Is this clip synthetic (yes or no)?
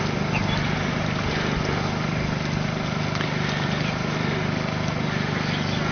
no